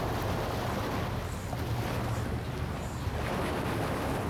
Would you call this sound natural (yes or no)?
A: yes